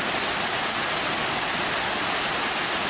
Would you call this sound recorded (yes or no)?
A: yes